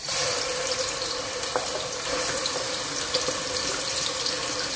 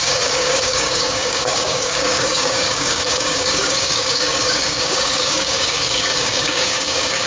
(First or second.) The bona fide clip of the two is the first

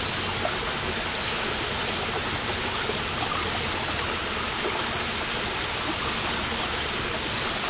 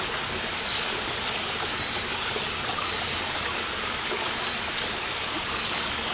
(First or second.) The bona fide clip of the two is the first